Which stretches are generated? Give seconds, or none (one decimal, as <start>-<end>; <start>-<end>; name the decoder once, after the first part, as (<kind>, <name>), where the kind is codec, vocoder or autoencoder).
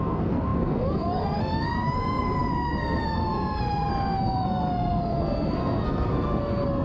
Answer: 0.0-6.8 (codec, SNAC)